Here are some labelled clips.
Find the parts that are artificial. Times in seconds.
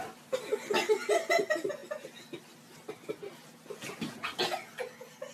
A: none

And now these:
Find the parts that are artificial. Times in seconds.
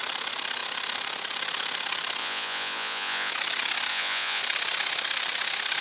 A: 2.2-3.3 (vocoder, Vocos); 3.9-4.4